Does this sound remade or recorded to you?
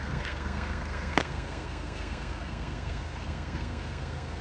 remade